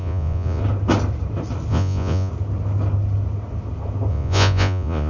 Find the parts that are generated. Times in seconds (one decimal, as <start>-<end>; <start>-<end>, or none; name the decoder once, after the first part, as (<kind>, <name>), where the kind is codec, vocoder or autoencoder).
0.0-0.6 (vocoder, Vocos); 1.7-2.3; 4.1-5.1